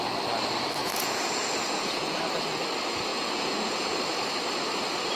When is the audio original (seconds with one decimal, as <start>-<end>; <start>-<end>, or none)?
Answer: 0.0-0.8; 2.2-3.1; 4.0-5.2